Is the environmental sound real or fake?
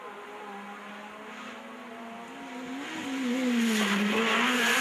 real